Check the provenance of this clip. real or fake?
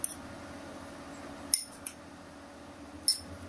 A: real